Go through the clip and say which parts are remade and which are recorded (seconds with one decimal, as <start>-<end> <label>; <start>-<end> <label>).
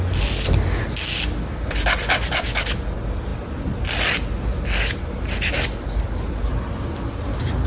0.0-7.7 recorded